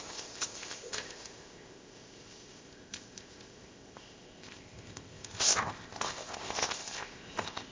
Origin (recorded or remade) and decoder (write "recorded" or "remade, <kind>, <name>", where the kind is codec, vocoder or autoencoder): remade, codec, ZipCodec